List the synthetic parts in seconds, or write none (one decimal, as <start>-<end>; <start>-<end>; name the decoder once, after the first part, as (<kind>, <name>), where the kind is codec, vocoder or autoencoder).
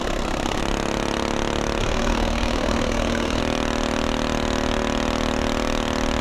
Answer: 0.0-0.6 (codec, SNAC); 1.8-3.4